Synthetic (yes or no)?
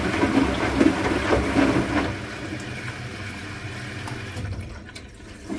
no